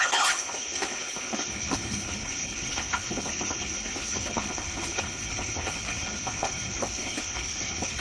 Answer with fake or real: fake